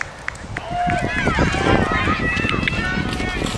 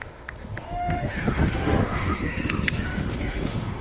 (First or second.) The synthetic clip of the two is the second